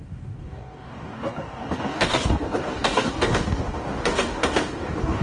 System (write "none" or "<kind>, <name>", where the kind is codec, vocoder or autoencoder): codec, DAC